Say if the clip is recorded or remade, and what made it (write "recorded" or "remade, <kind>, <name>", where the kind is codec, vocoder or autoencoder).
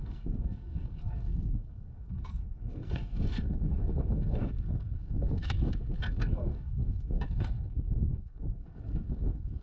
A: remade, codec, SNAC